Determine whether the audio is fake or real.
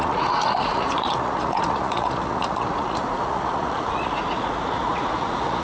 fake